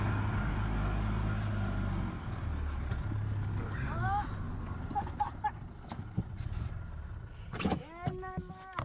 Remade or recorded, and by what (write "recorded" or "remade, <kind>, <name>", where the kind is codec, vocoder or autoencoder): recorded